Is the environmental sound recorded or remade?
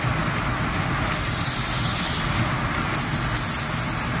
recorded